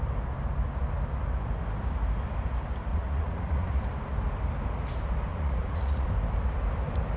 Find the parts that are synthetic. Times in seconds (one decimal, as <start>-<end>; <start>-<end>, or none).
2.9-3.8; 5.3-6.1